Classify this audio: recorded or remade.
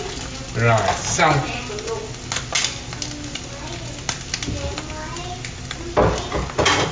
recorded